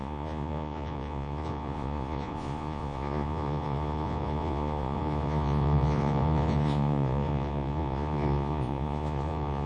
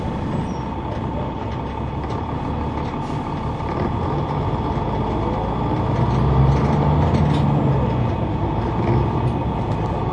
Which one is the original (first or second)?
second